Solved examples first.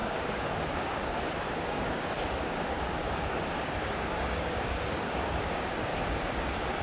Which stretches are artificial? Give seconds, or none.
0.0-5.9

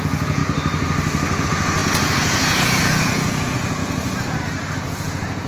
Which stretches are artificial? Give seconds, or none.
0.0-0.4; 1.4-5.5